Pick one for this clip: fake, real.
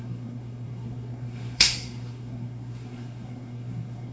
fake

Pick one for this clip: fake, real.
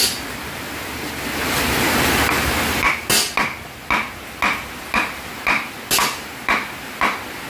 real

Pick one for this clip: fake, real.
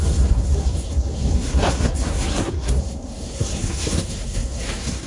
fake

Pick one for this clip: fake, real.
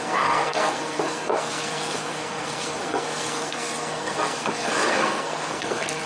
fake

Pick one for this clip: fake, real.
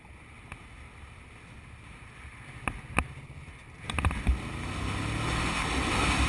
real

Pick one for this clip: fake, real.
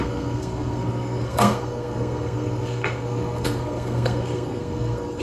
fake